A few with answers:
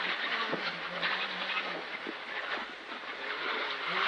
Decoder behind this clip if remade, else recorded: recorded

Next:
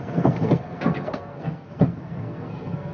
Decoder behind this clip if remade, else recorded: remade, codec, SNAC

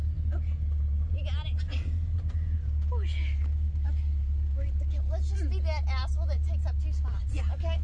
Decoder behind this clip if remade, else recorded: recorded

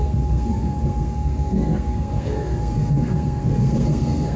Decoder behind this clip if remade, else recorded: remade, codec, SNAC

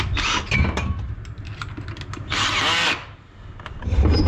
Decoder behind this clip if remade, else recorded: recorded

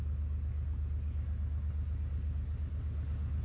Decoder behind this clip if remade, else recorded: recorded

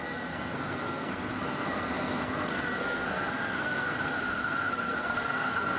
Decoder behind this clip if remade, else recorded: remade, codec, SNAC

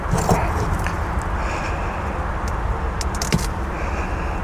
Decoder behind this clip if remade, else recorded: recorded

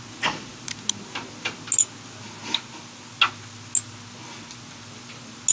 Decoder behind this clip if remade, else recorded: recorded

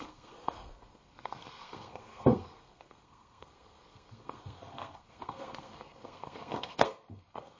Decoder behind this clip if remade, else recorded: remade, codec, SNAC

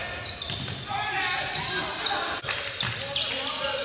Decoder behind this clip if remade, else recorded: recorded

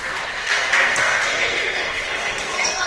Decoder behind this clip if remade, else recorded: remade, codec, SNAC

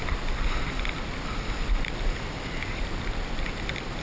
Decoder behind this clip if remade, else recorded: recorded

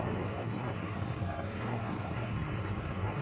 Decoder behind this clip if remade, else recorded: remade, codec, SNAC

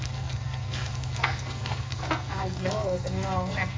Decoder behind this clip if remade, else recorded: remade, codec, SNAC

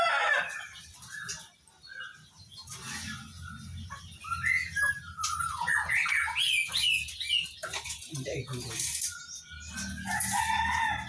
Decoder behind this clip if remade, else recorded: recorded